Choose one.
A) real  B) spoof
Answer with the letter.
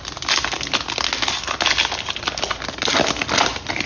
A